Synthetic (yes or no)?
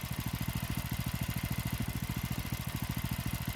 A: no